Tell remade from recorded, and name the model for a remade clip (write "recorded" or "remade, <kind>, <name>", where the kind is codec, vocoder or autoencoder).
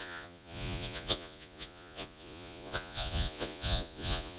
remade, vocoder, Vocos